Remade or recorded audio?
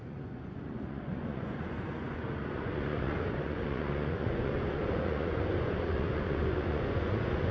remade